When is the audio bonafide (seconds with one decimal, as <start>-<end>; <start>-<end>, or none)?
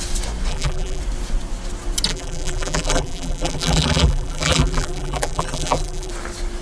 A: 0.0-0.5; 1.0-2.1; 6.1-6.6